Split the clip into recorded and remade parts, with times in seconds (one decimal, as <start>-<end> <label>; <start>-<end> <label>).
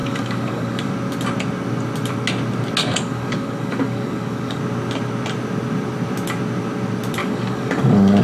0.0-0.9 remade; 0.9-2.8 recorded; 2.8-4.6 remade; 4.6-7.2 recorded; 7.2-8.2 remade